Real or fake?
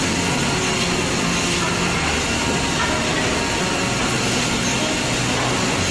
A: real